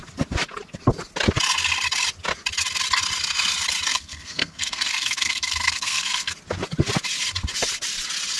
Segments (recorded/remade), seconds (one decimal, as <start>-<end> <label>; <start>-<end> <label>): 0.0-3.9 recorded; 3.9-6.3 remade; 6.3-8.4 recorded